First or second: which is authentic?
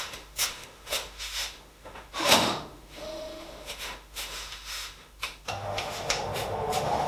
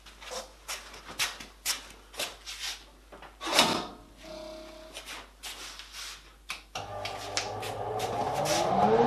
second